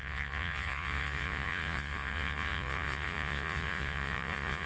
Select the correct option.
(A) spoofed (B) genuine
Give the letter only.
A